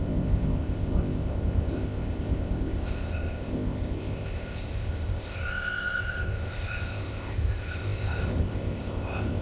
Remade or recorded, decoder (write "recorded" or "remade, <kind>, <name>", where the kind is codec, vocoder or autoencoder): remade, codec, ZipCodec